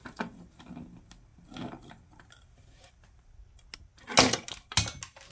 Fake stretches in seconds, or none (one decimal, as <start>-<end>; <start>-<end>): none